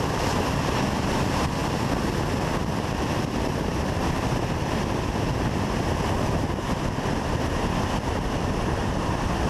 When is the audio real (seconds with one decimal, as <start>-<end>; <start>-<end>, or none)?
1.6-2.5